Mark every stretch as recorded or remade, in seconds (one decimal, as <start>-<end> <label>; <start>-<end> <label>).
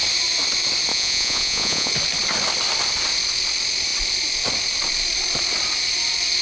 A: 0.0-0.9 recorded; 0.9-1.9 remade; 1.9-6.4 recorded